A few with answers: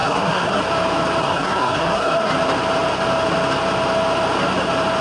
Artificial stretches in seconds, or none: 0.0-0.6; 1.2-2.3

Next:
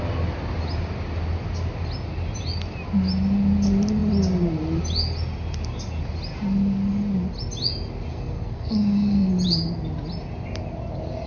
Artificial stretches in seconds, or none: 8.1-9.3

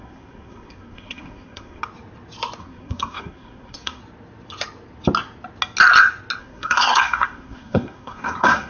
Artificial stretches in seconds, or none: 0.0-1.8; 2.6-4.0; 6.4-8.7